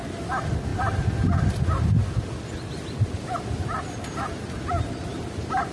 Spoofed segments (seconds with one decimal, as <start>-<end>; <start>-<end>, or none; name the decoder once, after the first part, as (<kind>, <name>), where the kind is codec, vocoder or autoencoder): none

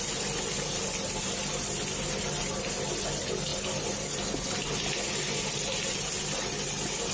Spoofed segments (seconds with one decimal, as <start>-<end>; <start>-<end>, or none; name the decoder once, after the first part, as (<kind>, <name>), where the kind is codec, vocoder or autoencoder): none

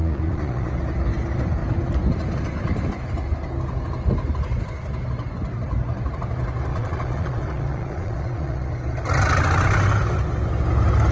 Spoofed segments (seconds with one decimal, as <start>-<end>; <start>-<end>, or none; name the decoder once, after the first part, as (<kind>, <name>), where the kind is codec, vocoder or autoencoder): 0.0-0.7 (vocoder, Vocos); 6.7-8.7